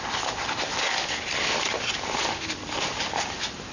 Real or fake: real